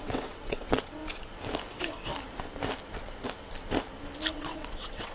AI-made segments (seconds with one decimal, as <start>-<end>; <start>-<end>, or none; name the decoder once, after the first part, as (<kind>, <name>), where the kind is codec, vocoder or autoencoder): 0.0-1.0 (vocoder, WaveNeXt); 1.7-2.1; 4.3-5.1